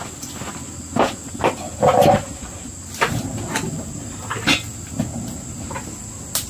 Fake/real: real